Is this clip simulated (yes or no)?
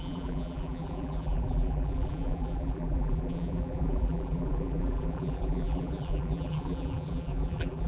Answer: yes